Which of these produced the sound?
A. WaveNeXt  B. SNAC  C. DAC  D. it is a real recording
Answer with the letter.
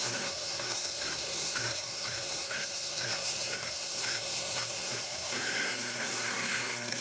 B